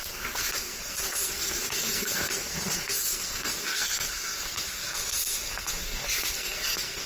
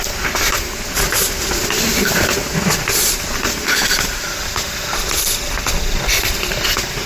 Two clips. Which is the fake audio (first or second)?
first